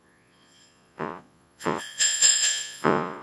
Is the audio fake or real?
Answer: fake